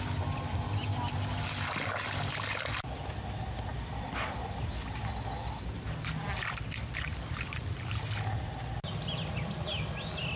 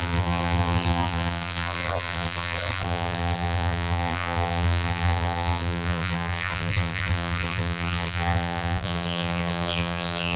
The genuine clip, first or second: first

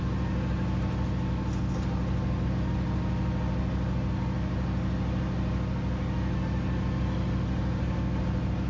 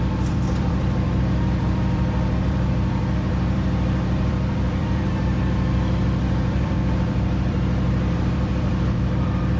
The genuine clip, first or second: first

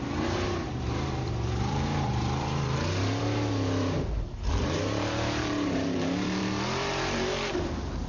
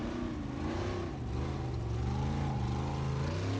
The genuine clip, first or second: second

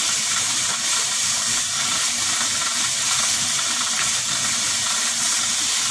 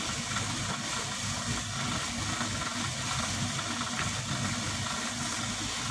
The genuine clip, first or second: second